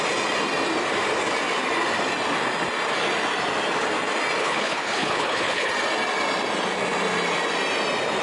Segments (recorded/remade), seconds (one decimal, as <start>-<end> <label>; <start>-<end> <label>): 0.0-4.4 recorded; 4.4-5.7 remade; 5.7-8.2 recorded